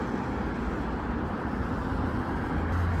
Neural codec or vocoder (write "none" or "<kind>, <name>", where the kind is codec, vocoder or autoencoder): none